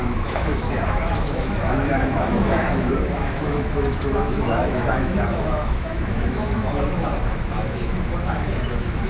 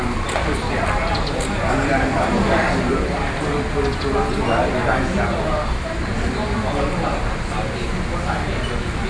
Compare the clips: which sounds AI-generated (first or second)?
first